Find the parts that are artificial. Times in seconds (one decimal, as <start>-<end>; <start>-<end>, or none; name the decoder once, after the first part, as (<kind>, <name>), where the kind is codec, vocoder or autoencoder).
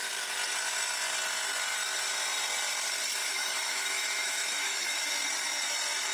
3.2-5.1 (autoencoder, DAC-VAE)